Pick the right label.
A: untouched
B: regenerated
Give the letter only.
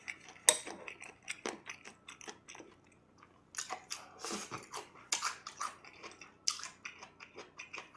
A